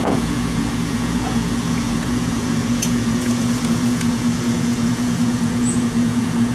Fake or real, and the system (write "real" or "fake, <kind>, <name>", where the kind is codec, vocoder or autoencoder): fake, vocoder, Vocos